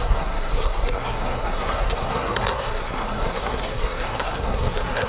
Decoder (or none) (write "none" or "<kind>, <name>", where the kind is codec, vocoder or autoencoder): codec, SNAC